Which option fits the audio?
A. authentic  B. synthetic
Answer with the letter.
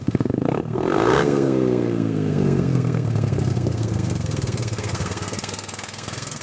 B